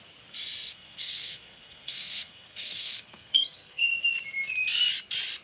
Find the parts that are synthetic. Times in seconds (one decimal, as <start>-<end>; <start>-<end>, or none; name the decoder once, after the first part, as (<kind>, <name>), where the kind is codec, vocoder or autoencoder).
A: 0.7-3.9 (codec, SNAC)